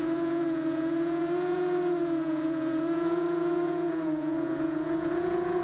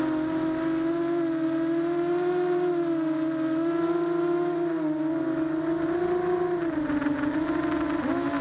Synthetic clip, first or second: first